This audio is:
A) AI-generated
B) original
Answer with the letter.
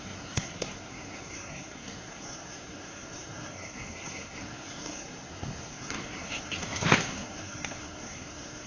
A